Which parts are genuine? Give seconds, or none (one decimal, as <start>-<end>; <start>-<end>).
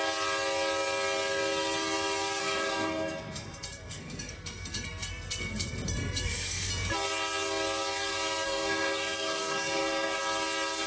0.0-2.4; 6.7-8.1; 10.2-10.9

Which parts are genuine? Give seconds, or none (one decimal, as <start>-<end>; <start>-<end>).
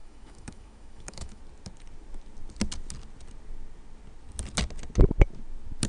1.4-5.9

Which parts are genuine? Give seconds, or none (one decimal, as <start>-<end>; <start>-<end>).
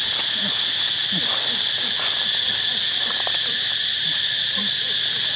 0.0-5.4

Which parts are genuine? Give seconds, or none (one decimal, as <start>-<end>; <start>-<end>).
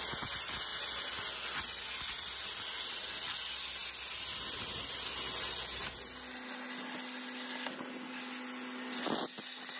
0.0-9.8